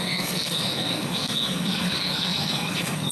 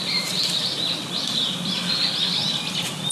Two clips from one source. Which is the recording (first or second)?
second